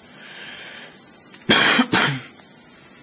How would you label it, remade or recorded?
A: recorded